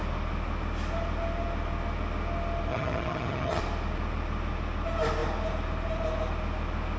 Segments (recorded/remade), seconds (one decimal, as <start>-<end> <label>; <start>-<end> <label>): 0.0-2.7 recorded; 2.7-3.6 remade; 3.6-7.0 recorded